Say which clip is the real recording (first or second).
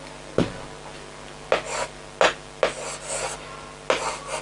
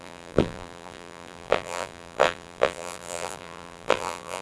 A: first